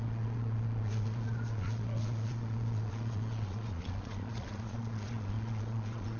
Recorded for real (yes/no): no